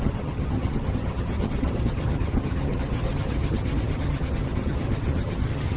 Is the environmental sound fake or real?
fake